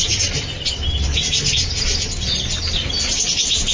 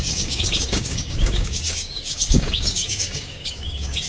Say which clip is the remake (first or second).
second